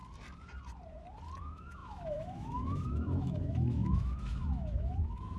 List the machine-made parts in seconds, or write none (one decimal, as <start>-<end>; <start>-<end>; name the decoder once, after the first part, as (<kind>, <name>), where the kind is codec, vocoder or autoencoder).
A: 1.4-5.4 (autoencoder, DAC-VAE)